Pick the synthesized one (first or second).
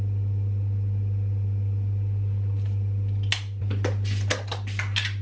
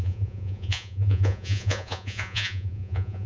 second